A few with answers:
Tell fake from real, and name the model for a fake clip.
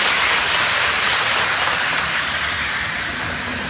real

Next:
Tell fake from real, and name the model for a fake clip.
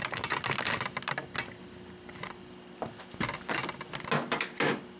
real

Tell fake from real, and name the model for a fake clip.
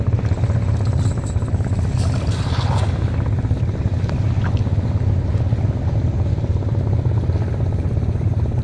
real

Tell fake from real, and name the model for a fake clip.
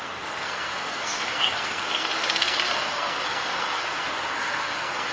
fake, codec, SNAC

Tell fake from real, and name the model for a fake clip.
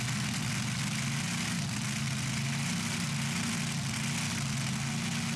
real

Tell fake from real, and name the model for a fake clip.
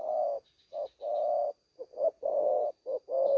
real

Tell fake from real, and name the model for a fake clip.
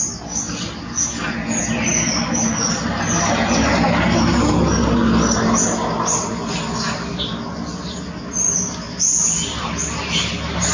real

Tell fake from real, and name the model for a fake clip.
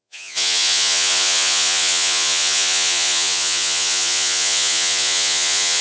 fake, vocoder, Vocos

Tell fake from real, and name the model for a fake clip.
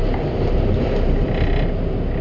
real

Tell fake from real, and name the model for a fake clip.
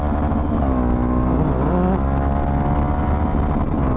real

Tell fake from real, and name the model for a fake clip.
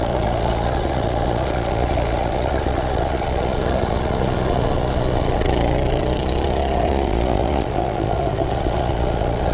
fake, vocoder, Vocos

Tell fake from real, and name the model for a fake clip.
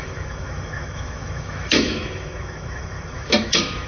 fake, autoencoder, DAC-VAE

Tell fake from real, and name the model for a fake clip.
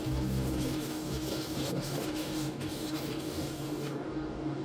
fake, codec, DAC